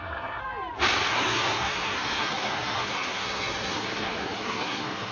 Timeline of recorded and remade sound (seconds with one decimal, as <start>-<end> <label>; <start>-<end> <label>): 0.0-0.4 remade; 0.4-1.1 recorded; 1.1-5.1 remade